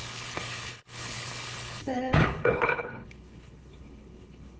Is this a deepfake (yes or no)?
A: yes